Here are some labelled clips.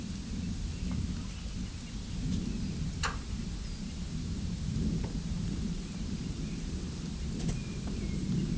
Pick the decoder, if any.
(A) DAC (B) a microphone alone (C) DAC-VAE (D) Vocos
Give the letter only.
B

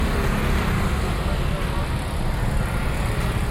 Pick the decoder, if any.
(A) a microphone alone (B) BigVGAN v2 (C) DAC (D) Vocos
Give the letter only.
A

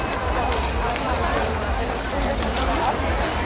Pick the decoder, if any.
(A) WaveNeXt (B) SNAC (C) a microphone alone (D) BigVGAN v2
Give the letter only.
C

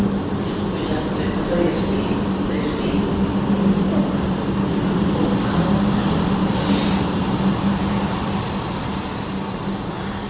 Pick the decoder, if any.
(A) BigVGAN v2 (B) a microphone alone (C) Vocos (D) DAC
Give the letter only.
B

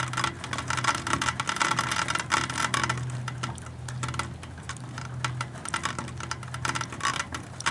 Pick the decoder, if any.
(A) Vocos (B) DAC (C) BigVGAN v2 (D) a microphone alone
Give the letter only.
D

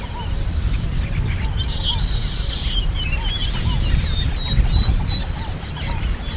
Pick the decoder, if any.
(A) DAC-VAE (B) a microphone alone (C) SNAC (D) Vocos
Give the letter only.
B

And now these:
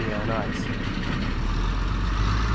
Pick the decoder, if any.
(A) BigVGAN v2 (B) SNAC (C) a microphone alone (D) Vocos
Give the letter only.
C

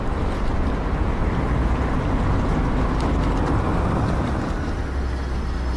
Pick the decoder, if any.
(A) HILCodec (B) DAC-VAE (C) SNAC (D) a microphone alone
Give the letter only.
D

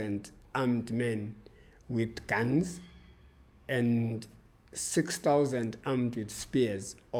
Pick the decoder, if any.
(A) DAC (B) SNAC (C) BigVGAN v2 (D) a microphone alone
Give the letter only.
A